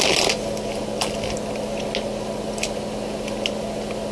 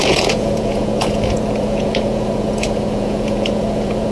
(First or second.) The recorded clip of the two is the first